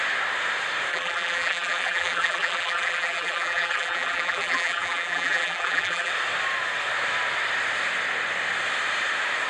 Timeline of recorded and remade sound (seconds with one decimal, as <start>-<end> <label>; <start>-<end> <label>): 0.0-0.9 recorded; 0.9-6.1 remade; 6.1-9.5 recorded